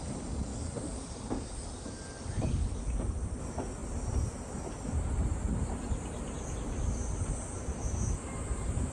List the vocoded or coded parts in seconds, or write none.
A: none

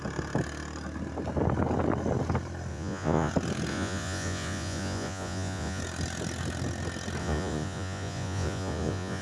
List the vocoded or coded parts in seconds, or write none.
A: 2.7-3.3 (vocoder, Vocos); 3.7-5.8; 7.2-9.2